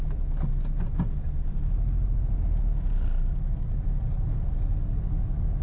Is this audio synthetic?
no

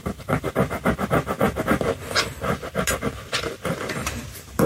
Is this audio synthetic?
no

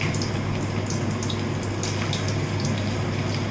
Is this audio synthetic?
no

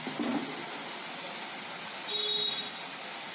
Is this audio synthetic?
no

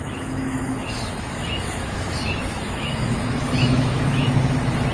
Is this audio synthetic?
yes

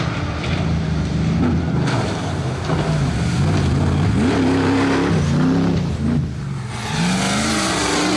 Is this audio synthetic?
no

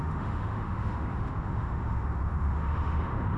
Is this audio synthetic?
yes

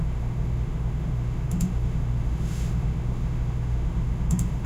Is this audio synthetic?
yes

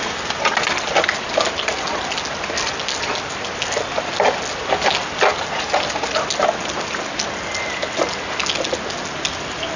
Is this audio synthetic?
no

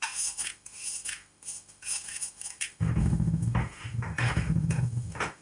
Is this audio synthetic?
yes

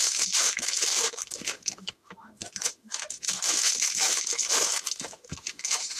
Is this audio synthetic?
yes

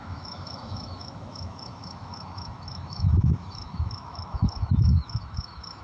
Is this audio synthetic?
yes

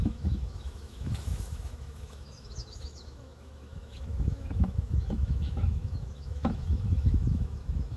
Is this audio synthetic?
yes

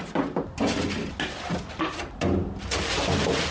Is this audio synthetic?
no